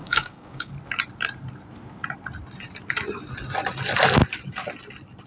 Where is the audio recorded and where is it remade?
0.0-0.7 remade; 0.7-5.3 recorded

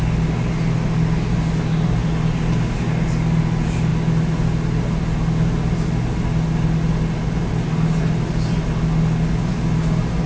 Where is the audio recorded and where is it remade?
0.0-10.3 recorded